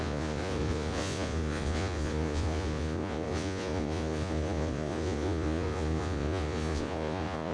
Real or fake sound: fake